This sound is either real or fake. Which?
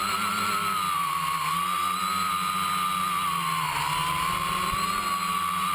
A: real